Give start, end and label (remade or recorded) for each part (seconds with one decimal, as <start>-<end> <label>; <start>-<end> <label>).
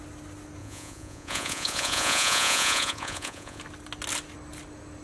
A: 0.0-0.6 recorded; 0.6-3.6 remade; 3.6-5.0 recorded